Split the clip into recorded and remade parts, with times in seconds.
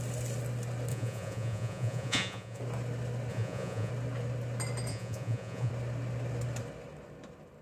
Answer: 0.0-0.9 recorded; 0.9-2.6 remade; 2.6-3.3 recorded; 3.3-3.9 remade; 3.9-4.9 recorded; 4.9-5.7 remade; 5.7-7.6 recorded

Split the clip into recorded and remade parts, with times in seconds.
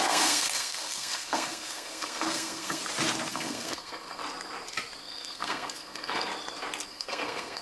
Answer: 0.0-2.8 remade; 2.8-3.3 recorded; 3.3-4.2 remade; 4.2-5.0 recorded; 5.0-6.3 remade; 6.3-6.9 recorded; 6.9-7.6 remade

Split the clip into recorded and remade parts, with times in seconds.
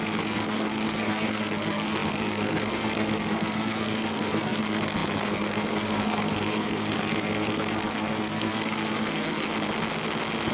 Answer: 0.0-9.5 remade; 9.5-10.5 recorded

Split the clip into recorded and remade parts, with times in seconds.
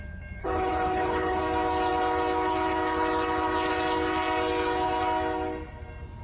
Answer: 0.0-0.4 recorded; 0.4-1.4 remade; 1.4-6.2 recorded